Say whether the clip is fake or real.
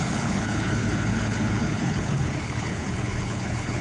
fake